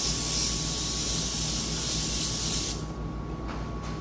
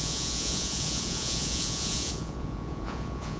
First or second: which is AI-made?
second